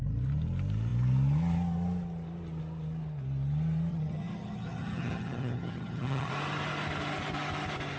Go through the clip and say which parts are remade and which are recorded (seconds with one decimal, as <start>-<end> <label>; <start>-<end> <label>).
0.0-3.9 recorded; 3.9-6.3 remade; 6.3-8.0 recorded